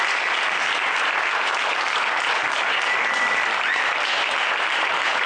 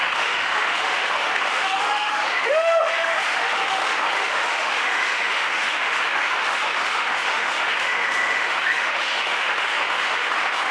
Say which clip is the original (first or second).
first